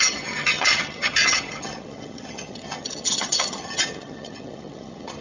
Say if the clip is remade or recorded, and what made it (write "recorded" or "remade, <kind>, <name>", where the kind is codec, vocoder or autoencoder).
remade, vocoder, HiFi-GAN